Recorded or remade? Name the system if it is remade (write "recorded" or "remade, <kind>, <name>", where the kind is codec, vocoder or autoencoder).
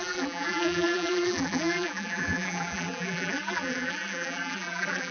remade, vocoder, BigVGAN v2